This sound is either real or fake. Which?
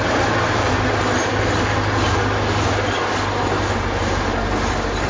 fake